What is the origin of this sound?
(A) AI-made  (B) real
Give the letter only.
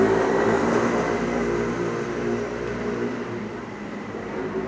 B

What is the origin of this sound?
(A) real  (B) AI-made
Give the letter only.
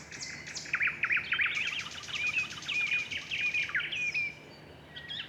A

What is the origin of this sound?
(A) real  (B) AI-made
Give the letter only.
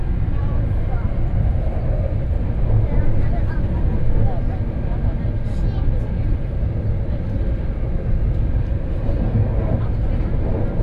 A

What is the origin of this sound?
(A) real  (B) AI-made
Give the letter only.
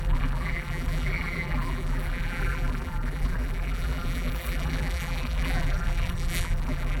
B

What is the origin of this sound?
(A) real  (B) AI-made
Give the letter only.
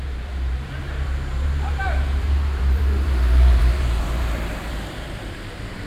B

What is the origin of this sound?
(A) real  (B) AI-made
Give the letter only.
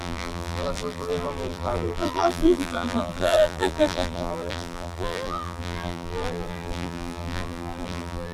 B